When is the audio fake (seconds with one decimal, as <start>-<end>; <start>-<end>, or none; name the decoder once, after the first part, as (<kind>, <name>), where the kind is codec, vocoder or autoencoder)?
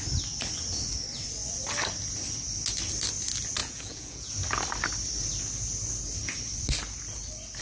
3.6-4.3 (vocoder, Vocos)